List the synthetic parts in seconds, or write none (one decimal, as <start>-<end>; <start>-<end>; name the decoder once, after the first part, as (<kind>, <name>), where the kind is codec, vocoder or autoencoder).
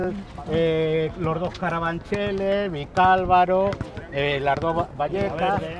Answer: none